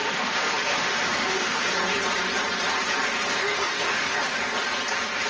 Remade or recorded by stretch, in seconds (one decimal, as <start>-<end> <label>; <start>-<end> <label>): 0.0-1.7 remade; 1.7-3.3 recorded; 3.3-4.4 remade; 4.4-5.3 recorded